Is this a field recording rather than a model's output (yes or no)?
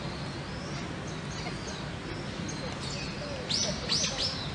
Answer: yes